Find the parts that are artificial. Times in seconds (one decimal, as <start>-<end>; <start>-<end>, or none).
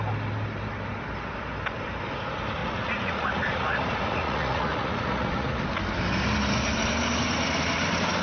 2.6-5.6